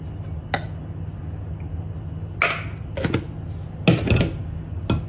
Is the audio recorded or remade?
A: recorded